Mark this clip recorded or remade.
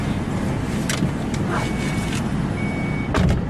recorded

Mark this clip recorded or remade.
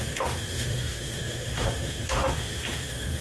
remade